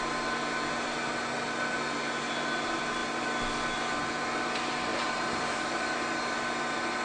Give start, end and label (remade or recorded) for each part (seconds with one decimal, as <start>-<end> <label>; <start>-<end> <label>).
0.0-4.9 recorded; 4.9-6.0 remade; 6.0-7.0 recorded